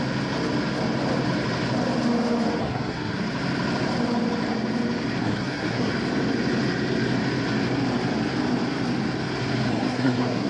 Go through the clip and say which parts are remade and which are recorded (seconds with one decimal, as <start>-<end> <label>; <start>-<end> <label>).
0.0-2.6 recorded; 2.6-3.2 remade; 3.2-5.2 recorded; 5.2-5.9 remade; 5.9-9.7 recorded; 9.7-10.5 remade